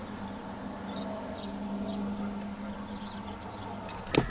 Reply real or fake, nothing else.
real